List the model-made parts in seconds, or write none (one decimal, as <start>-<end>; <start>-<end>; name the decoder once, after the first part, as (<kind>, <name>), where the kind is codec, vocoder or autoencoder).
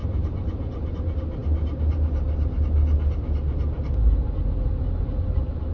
0.0-0.9 (vocoder, BigVGAN v2)